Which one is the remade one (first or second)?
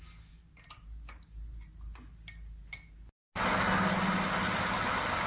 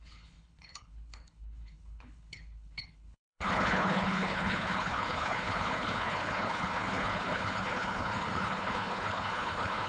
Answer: second